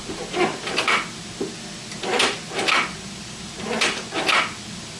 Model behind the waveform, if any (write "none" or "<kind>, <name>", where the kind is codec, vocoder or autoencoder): none